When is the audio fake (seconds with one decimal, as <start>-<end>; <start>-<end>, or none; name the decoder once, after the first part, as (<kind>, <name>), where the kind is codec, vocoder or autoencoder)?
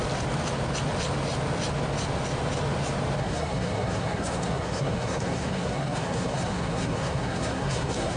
3.2-8.2 (codec, SNAC)